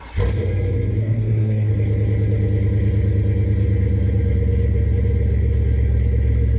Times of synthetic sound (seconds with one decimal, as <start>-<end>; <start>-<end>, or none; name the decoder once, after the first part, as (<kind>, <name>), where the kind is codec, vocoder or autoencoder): 1.0-1.7 (codec, SNAC)